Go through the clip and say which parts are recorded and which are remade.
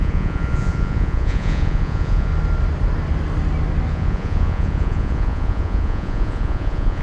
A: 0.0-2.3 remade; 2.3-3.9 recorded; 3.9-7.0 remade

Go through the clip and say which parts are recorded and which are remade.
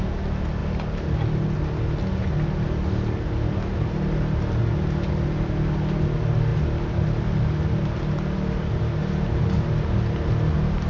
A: 0.0-10.9 recorded